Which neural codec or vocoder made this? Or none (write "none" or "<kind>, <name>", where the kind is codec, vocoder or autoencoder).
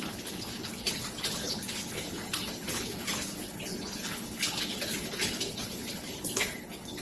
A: codec, HILCodec